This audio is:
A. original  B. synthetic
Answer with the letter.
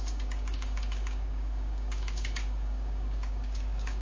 B